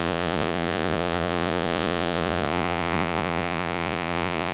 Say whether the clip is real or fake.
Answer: fake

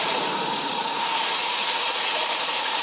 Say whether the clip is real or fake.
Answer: fake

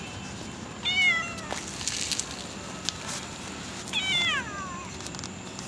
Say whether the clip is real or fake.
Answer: real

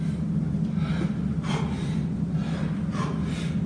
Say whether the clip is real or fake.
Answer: real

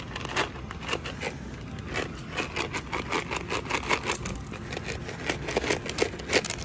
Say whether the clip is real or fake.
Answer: real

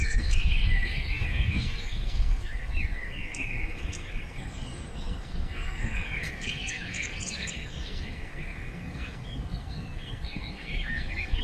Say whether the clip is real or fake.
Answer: fake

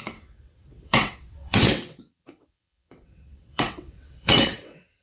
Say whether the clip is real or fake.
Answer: fake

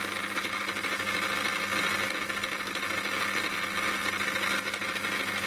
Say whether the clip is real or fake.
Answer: real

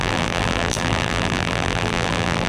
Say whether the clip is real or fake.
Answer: fake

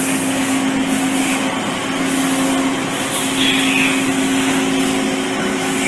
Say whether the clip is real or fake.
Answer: real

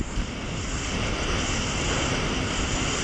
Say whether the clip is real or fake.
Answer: real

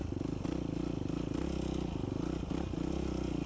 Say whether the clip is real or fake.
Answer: real